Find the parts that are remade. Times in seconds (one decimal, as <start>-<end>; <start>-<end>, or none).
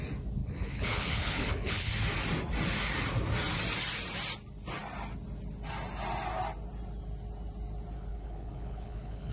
0.4-1.9; 8.1-9.3